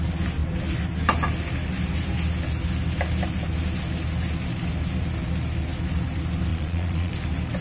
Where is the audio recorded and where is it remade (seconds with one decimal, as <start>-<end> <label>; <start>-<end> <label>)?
0.0-6.5 recorded; 6.5-7.1 remade; 7.1-7.6 recorded